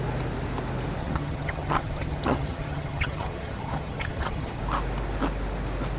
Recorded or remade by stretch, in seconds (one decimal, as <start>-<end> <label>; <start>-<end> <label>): 0.0-1.0 recorded; 1.0-4.6 remade; 4.6-6.0 recorded

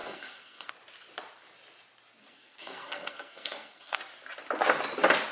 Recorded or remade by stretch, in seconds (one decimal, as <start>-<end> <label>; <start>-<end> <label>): 0.0-0.7 remade; 0.7-2.2 recorded; 2.2-4.0 remade; 4.0-5.3 recorded

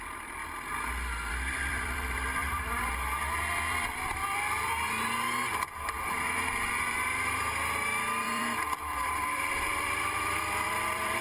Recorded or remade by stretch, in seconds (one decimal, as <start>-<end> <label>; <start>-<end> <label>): 0.0-0.4 remade; 0.4-1.3 recorded; 1.3-11.2 remade

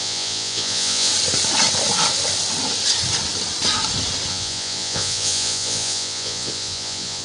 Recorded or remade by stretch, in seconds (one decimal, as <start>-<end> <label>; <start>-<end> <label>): 0.0-1.1 remade; 1.1-4.3 recorded; 4.3-7.2 remade

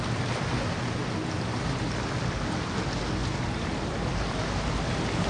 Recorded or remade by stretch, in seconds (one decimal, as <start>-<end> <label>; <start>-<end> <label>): 0.0-5.3 recorded

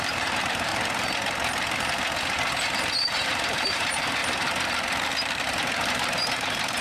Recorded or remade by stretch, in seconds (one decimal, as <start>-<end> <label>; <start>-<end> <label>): 0.0-0.7 remade; 0.7-2.9 recorded; 2.9-4.2 remade; 4.2-5.1 recorded; 5.1-6.8 remade

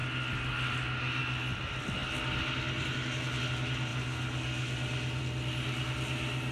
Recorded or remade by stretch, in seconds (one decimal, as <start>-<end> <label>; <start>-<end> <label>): 0.0-6.5 recorded